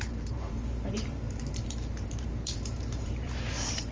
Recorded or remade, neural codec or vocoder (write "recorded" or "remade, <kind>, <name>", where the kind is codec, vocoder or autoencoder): remade, vocoder, BigVGAN v2